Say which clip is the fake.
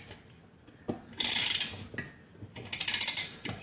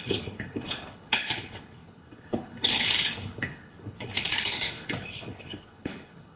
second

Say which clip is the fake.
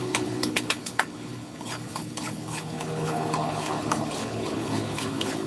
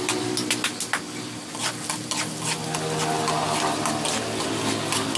first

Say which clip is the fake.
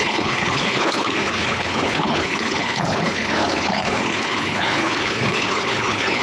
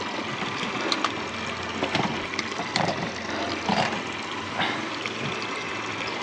first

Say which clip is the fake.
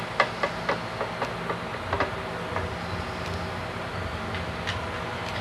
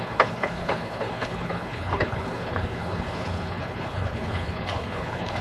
second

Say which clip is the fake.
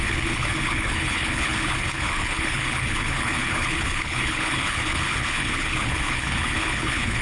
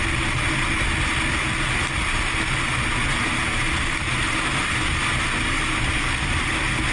first